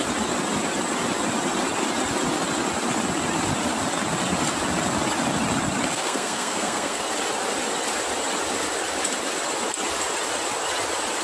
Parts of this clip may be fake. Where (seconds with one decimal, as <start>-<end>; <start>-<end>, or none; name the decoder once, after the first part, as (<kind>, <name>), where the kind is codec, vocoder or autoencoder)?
5.9-7.0 (codec, SNAC)